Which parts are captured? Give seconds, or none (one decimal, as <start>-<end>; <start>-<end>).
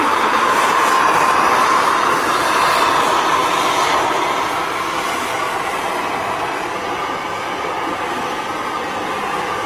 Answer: 0.0-9.7